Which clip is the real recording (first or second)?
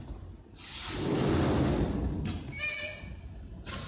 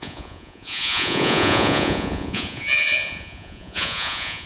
first